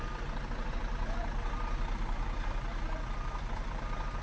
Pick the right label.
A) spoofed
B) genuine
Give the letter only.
B